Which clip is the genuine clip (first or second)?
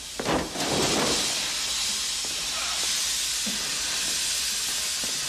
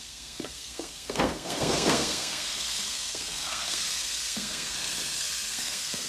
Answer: first